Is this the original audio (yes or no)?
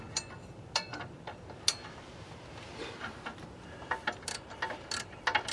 yes